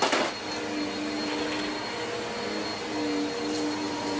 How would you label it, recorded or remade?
recorded